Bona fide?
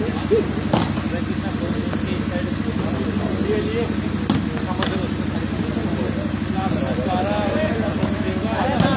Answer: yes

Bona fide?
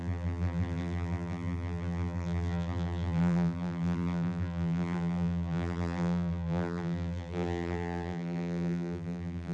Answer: no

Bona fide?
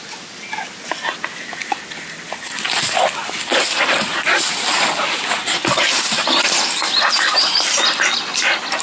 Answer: yes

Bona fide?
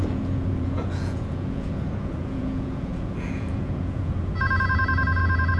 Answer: no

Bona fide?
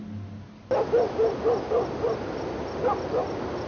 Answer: yes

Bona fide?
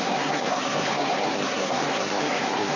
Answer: no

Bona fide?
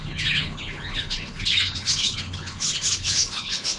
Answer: no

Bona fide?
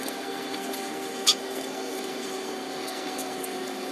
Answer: no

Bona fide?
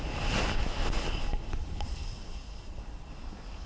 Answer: yes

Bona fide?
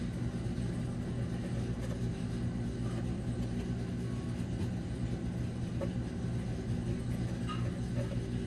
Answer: yes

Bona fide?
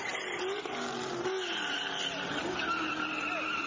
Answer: no